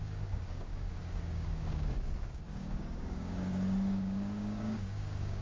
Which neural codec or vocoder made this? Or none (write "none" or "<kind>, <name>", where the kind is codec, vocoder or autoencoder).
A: codec, DAC